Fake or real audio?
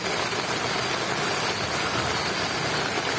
real